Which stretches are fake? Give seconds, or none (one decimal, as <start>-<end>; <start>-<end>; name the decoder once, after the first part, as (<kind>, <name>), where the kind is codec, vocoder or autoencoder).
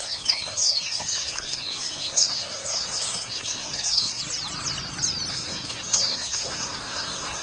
0.0-4.2 (codec, SNAC); 5.3-7.4